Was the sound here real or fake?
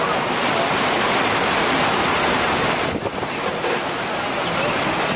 real